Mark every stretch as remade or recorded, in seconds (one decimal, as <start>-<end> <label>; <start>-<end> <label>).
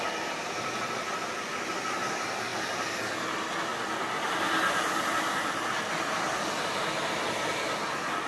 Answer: 0.0-8.3 recorded